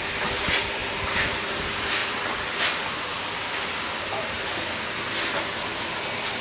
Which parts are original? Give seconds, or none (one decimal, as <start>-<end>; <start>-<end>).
0.0-0.8; 1.5-2.0; 2.6-6.4